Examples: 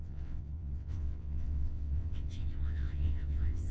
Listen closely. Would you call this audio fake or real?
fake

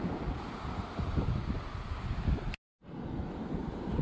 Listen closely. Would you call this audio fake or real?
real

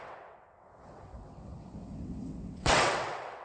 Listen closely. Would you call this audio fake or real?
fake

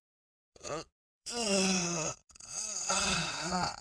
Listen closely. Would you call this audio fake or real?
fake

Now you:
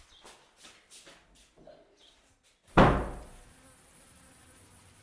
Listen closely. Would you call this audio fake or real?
real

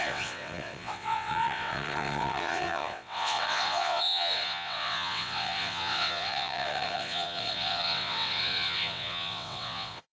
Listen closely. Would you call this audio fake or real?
fake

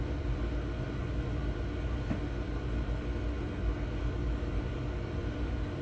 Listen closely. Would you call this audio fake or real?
real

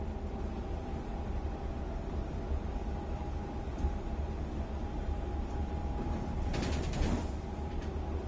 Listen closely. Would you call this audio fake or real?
real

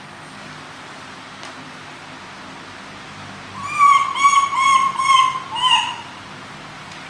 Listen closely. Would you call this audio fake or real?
real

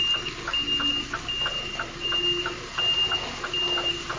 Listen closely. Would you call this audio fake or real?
real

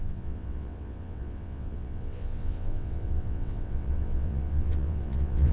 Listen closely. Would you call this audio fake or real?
fake